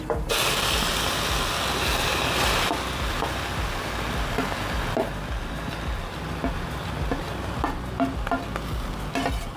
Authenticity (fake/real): real